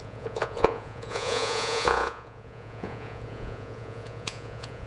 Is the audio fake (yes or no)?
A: yes